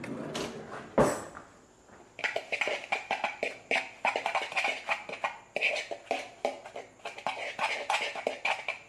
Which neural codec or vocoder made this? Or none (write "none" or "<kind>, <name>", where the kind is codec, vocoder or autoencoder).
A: none